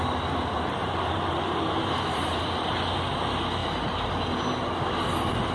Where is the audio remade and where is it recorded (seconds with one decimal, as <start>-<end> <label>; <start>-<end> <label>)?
0.0-0.8 recorded; 0.8-2.4 remade; 2.4-3.6 recorded; 3.6-4.1 remade; 4.1-5.5 recorded